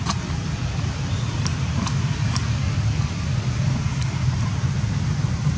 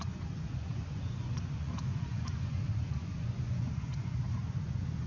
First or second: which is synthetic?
second